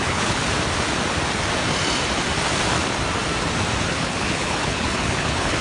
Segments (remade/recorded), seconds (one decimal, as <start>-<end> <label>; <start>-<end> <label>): 0.0-0.4 remade; 0.4-3.8 recorded; 3.8-5.6 remade